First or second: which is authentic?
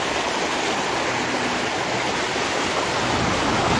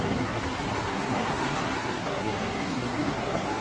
first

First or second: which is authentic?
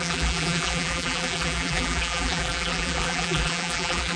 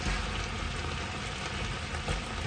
second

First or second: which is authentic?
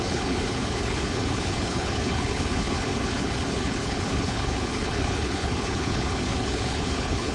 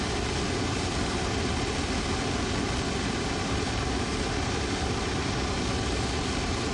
second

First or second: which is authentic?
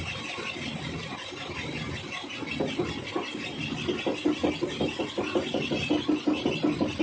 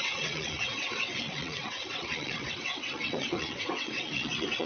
first